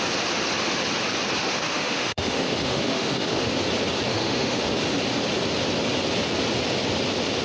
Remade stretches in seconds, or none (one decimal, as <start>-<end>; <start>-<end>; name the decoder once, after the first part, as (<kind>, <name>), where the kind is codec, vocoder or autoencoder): 1.4-3.5 (autoencoder, DAC-VAE); 4.1-4.6